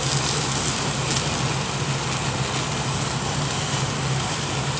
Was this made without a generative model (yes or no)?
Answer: yes